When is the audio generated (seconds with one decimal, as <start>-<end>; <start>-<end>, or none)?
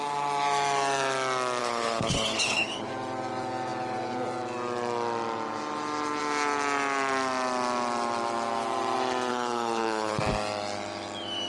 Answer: 1.6-2.9; 9.3-10.2